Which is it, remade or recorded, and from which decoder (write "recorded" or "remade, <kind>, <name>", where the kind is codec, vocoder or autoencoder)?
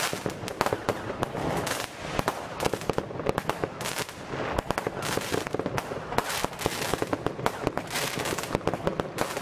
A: recorded